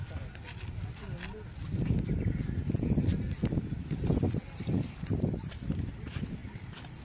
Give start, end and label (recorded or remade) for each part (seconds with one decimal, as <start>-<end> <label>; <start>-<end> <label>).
0.0-1.5 recorded; 1.5-3.1 remade; 3.1-4.2 recorded; 4.2-7.0 remade

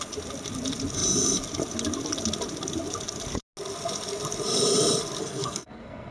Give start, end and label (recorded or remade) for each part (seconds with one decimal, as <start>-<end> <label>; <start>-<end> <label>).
0.0-5.2 recorded; 5.2-6.1 remade

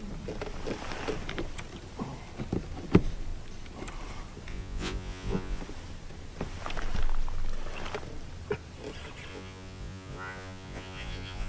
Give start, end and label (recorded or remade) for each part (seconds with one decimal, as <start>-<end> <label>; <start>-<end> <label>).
0.0-4.5 recorded; 4.5-5.6 remade; 5.6-9.3 recorded; 9.3-11.5 remade

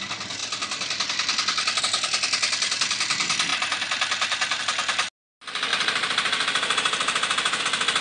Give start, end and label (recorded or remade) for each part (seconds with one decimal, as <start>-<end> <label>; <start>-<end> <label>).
0.0-3.5 recorded; 3.5-4.6 remade; 4.6-5.7 recorded; 5.7-7.6 remade; 7.6-8.0 recorded